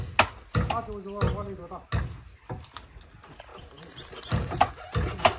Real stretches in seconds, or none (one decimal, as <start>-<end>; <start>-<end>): 0.0-3.5; 4.7-5.4